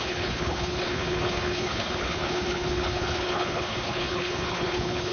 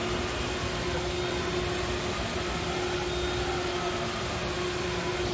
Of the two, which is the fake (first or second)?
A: first